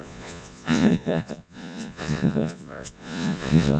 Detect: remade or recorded remade